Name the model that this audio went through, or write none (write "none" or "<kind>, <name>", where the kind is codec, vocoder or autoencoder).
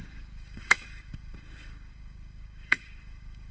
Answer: codec, DAC